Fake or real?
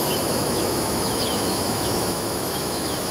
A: fake